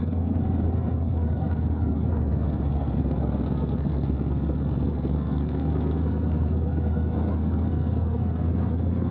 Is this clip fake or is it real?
fake